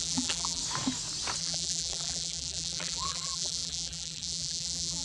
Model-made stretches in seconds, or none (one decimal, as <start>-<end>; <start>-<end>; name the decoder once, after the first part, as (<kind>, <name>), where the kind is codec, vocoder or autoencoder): 0.0-0.6 (vocoder, BigVGAN v2); 1.4-5.0